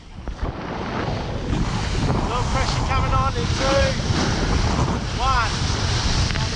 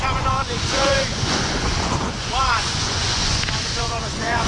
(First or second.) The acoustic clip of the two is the first